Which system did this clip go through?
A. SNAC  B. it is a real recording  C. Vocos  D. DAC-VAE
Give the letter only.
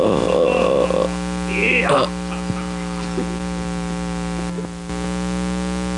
B